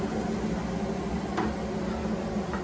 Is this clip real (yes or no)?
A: yes